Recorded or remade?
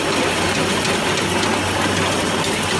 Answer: recorded